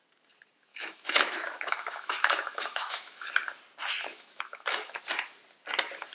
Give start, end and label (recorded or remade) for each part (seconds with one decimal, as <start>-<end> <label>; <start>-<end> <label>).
0.0-0.7 recorded; 0.7-3.3 remade; 3.3-4.1 recorded; 4.1-5.0 remade; 5.0-6.1 recorded